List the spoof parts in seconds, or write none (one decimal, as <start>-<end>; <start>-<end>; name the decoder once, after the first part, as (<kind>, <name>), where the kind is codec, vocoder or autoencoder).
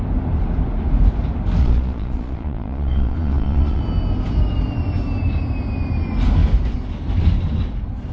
1.6-3.8 (vocoder, Vocos)